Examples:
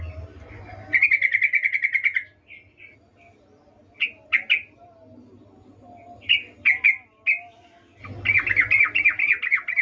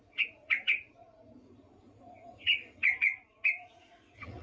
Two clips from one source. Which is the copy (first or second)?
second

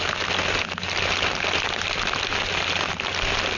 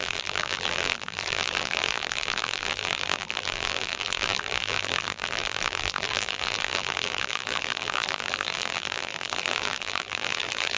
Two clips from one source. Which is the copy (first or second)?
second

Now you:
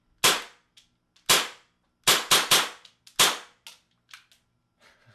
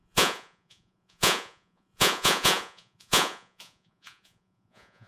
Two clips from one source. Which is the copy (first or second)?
second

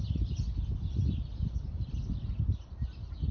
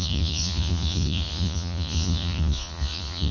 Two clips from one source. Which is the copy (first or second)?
second